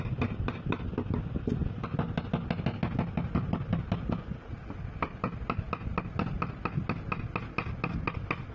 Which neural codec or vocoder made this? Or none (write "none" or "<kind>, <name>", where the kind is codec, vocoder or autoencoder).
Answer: none